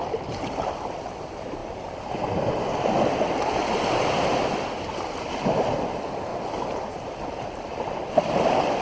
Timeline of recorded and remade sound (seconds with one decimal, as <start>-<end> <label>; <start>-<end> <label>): 0.0-8.8 recorded